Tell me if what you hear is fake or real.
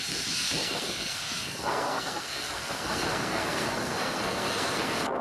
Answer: fake